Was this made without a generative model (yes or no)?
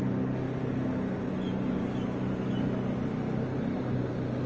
yes